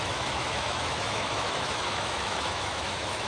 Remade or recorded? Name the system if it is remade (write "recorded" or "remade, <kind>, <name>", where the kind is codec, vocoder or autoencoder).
remade, autoencoder, DAC-VAE